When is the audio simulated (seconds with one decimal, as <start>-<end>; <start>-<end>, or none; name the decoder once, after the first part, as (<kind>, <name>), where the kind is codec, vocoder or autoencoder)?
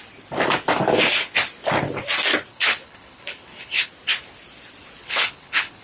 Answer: 2.5-3.9 (codec, HILCodec); 5.0-5.8